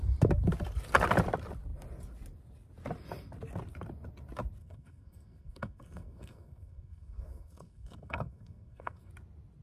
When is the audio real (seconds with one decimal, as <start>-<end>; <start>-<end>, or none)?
0.0-4.6; 9.1-9.6

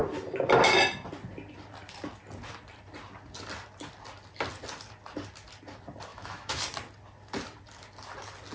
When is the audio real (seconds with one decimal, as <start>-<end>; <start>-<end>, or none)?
0.0-6.1; 6.6-8.5

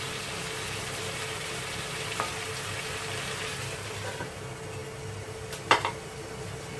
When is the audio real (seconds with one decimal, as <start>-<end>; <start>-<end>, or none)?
0.0-1.2; 2.9-6.8